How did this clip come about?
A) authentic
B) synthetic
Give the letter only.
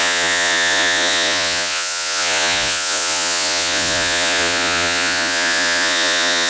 B